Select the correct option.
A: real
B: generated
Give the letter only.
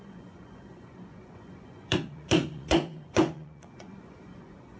B